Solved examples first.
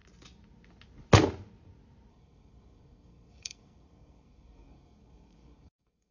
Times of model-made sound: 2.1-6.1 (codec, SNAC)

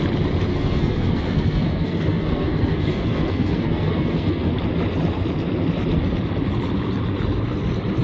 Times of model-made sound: 0.5-4.5 (codec, SNAC)

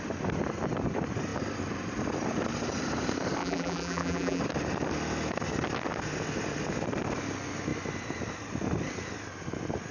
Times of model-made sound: 3.4-4.4 (vocoder, BigVGAN v2)

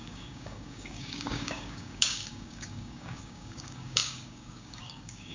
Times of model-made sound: 0.0-5.3 (codec, DAC)

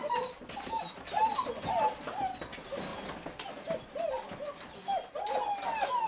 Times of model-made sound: none

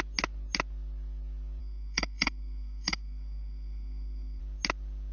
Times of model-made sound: 1.6-4.4 (codec, SNAC)

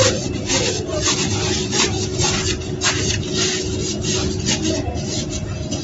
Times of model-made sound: 0.0-1.0 (vocoder, BigVGAN v2)